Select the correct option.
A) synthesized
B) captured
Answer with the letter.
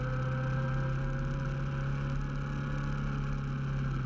B